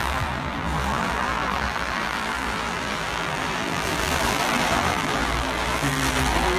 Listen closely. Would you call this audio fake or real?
fake